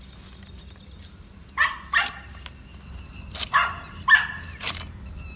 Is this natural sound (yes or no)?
yes